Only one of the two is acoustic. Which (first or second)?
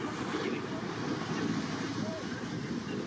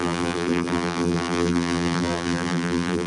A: first